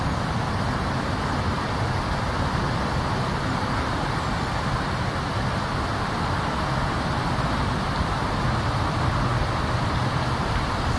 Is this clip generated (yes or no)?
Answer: no